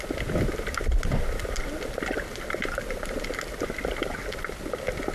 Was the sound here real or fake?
real